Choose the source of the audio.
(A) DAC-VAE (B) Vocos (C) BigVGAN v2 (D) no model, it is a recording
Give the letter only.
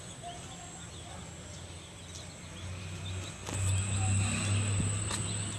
D